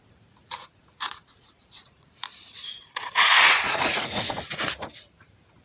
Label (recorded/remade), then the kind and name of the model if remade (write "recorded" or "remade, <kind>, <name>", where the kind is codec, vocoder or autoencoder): remade, vocoder, Vocos